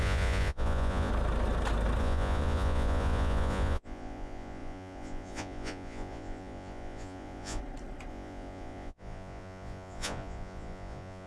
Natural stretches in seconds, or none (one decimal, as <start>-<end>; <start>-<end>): 1.1-2.0; 7.6-8.1